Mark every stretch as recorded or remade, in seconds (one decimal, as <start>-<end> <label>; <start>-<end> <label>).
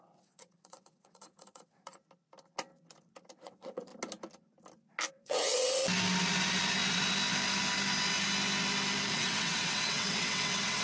0.0-2.0 remade; 2.0-3.4 recorded; 3.4-3.9 remade; 3.9-5.1 recorded; 5.1-5.8 remade; 5.8-9.1 recorded; 9.1-10.8 remade